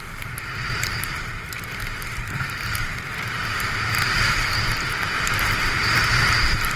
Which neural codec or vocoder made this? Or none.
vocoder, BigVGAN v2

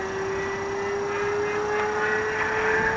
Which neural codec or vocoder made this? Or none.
none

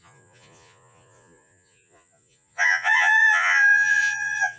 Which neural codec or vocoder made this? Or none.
vocoder, Vocos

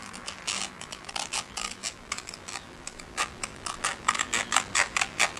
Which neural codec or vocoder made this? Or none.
vocoder, BigVGAN v2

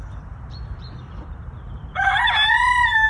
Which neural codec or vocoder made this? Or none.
vocoder, BigVGAN v2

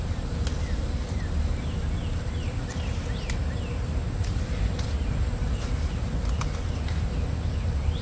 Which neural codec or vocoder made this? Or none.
none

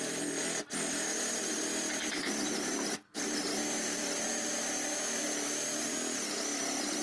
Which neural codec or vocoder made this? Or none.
none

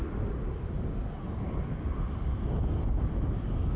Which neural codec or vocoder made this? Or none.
none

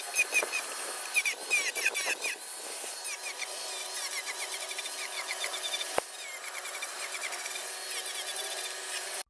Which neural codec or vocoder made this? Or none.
none